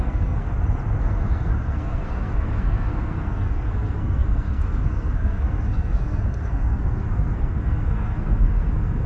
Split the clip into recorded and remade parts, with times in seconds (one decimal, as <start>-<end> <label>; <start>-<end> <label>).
0.0-0.5 remade; 0.5-1.0 recorded; 1.0-9.1 remade